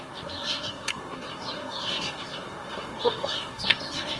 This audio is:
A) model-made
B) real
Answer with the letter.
A